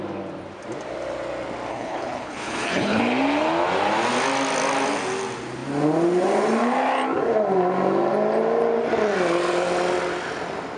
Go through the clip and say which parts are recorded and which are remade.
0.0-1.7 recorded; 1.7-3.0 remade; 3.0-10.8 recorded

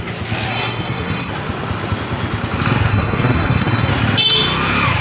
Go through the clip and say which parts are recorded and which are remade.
0.0-0.5 recorded; 0.5-1.3 remade; 1.3-2.9 recorded; 2.9-3.9 remade; 3.9-5.0 recorded

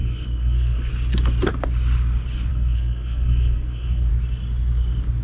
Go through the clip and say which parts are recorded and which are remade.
0.0-0.9 remade; 0.9-2.5 recorded; 2.5-4.1 remade; 4.1-5.2 recorded

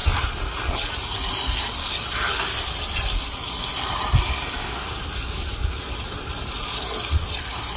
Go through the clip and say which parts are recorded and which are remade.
0.0-7.8 recorded